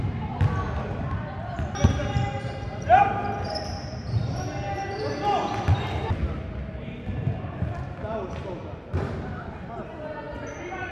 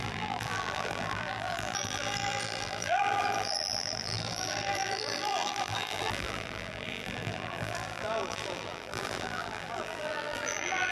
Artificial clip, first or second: second